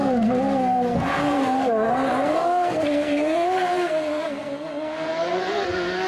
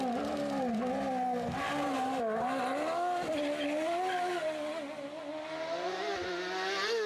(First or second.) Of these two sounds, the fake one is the first